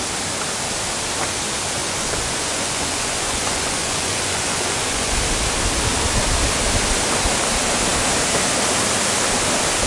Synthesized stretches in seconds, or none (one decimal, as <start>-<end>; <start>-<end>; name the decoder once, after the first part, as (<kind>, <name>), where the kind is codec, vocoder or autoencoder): 1.8-5.2 (vocoder, Vocos)

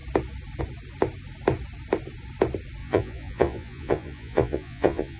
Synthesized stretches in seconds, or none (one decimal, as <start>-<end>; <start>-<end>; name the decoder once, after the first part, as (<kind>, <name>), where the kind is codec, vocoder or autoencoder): 2.8-5.2 (vocoder, Vocos)

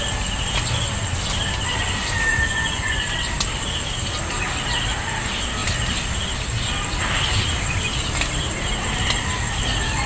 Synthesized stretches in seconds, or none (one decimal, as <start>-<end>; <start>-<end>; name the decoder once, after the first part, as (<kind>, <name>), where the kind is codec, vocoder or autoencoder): 2.3-3.1 (vocoder, Vocos)

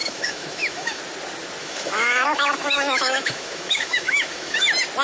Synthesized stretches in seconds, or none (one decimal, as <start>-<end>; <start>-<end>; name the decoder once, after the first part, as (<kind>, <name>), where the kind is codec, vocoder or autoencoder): 0.0-1.0 (autoencoder, DAC-VAE); 1.6-4.6